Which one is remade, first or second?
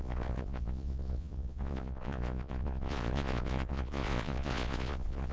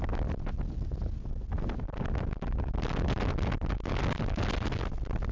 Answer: first